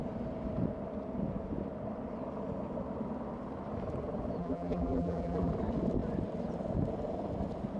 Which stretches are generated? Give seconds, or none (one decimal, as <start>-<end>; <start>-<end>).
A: 4.4-5.5